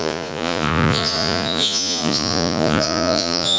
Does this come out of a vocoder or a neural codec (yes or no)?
yes